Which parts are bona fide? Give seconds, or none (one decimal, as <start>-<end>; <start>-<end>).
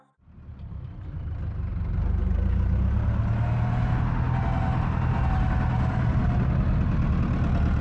0.0-0.5; 1.2-7.8